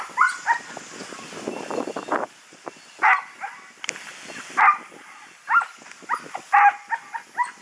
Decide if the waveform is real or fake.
real